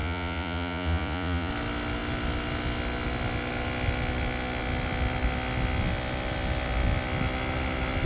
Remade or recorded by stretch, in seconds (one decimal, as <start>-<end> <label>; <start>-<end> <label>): 0.0-1.5 remade; 1.5-8.1 recorded